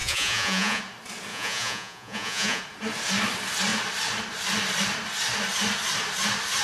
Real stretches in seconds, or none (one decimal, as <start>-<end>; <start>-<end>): 0.8-1.3; 2.6-6.6